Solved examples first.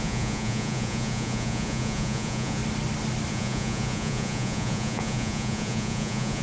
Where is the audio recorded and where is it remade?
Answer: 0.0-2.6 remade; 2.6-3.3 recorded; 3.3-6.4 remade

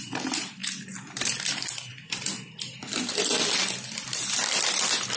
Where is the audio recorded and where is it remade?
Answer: 0.0-5.2 recorded

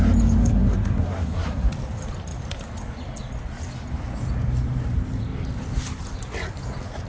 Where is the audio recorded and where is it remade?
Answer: 0.0-0.4 recorded; 0.4-1.7 remade; 1.7-7.1 recorded

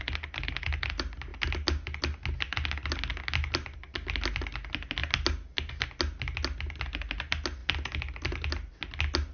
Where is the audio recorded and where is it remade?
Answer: 0.0-9.3 recorded

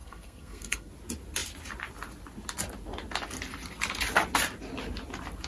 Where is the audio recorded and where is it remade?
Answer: 0.0-0.9 remade; 0.9-5.5 recorded